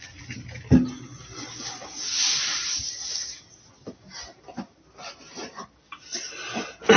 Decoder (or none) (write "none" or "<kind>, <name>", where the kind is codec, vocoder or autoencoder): none